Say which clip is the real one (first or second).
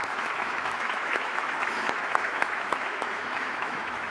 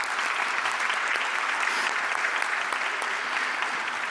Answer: second